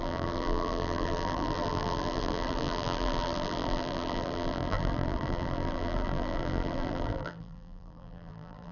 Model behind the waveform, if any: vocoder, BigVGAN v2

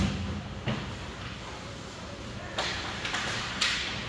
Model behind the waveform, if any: none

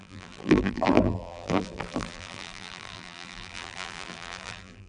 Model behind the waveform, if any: vocoder, BigVGAN v2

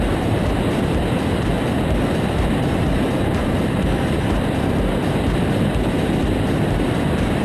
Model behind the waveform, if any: vocoder, BigVGAN v2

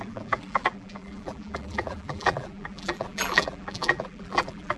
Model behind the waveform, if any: vocoder, BigVGAN v2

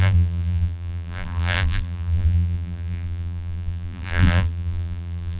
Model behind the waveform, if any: vocoder, BigVGAN v2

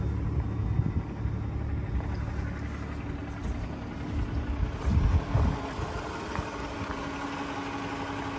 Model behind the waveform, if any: none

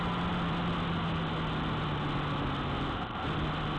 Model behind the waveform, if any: none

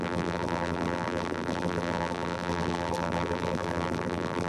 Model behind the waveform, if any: vocoder, BigVGAN v2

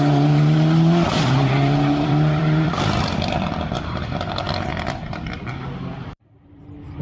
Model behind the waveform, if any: vocoder, BigVGAN v2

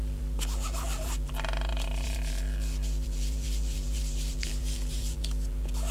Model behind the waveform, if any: vocoder, BigVGAN v2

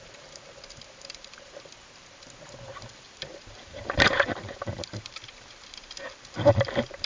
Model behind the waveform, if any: vocoder, BigVGAN v2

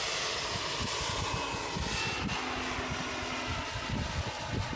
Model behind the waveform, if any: none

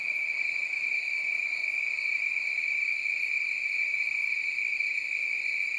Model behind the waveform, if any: none